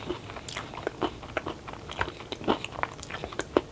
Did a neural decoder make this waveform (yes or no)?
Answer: no